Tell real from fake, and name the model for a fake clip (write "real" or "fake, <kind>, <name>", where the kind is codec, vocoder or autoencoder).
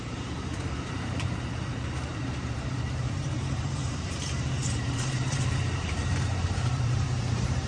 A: fake, vocoder, BigVGAN v2